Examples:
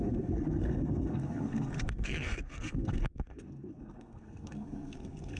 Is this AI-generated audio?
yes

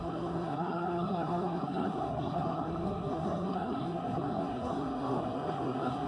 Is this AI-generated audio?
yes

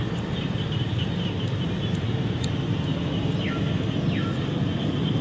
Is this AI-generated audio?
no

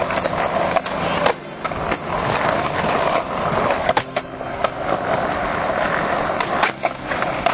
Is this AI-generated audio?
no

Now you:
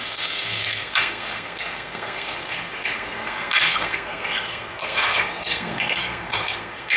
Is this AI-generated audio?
yes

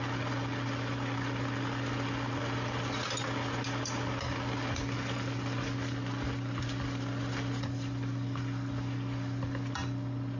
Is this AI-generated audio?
no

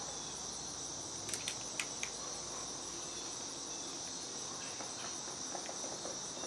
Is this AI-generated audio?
no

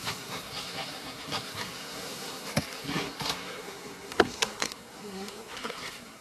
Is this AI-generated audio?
yes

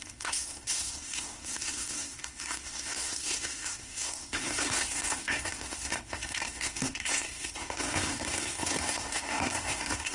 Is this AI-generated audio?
yes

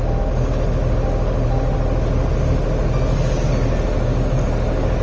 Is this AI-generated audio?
no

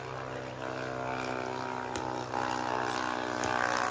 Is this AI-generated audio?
no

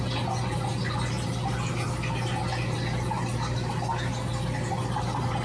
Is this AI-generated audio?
no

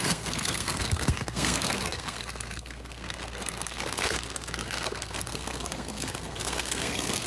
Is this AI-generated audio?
yes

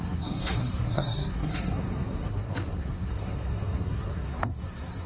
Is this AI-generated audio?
yes